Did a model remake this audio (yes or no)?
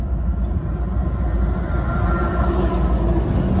no